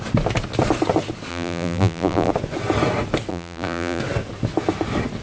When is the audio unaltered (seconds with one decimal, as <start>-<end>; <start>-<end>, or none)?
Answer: 0.0-1.3; 2.3-3.3; 4.0-5.2